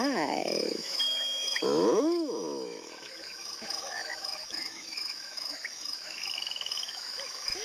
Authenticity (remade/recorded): remade